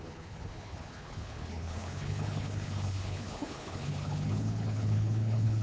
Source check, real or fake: fake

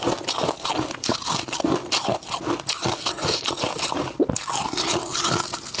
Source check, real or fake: real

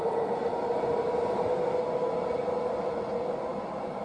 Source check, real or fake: real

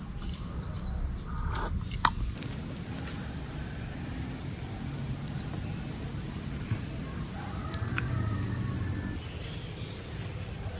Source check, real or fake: real